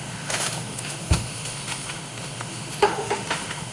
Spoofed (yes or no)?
yes